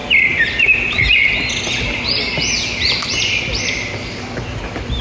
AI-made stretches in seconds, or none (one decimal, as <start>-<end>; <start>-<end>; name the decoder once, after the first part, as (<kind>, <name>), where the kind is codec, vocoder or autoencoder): none